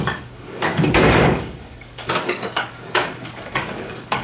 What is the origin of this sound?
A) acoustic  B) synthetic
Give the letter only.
B